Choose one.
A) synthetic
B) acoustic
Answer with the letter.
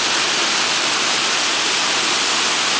B